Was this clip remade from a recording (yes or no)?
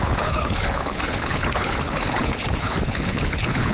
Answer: yes